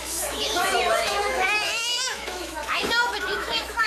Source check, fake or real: fake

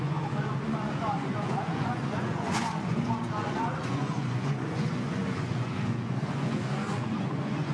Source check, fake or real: fake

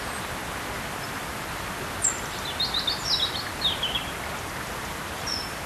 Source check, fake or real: real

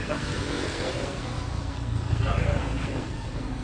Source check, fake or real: fake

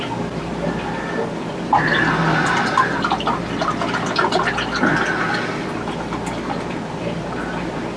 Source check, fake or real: real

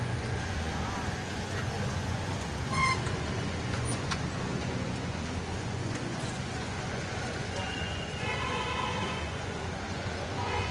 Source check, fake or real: fake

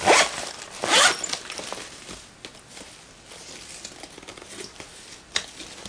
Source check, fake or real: real